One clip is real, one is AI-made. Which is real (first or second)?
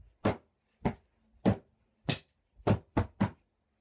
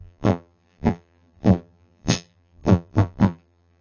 first